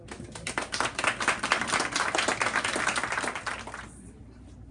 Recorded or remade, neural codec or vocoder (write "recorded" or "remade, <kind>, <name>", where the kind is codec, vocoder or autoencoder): recorded